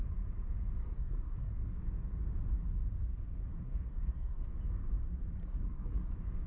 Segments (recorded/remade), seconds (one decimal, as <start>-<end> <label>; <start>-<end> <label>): 0.0-0.8 recorded; 0.8-1.5 remade; 1.5-3.5 recorded; 3.5-4.4 remade; 4.4-5.4 recorded; 5.4-6.1 remade; 6.1-6.5 recorded